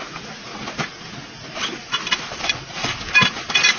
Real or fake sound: real